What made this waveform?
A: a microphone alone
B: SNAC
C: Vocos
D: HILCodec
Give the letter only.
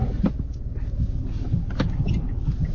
A